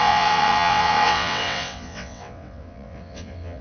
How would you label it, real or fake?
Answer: fake